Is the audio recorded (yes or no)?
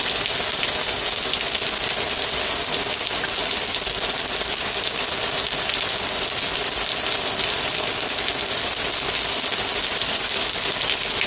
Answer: yes